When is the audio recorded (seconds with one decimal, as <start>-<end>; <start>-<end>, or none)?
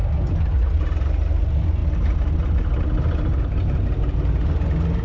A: 0.0-5.0